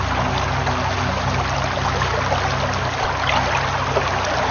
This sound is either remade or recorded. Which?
recorded